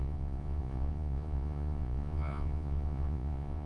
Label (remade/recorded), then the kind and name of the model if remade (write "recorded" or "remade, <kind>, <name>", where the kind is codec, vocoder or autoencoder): remade, vocoder, Vocos